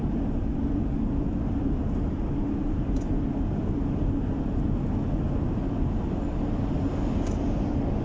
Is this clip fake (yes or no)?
no